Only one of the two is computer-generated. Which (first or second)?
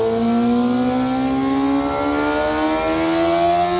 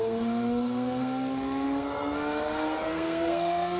second